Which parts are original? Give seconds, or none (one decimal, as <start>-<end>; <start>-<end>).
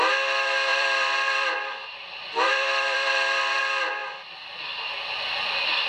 0.0-0.7; 3.6-5.9